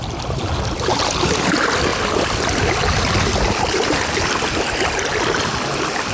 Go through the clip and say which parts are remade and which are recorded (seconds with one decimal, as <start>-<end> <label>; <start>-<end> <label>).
0.0-6.1 recorded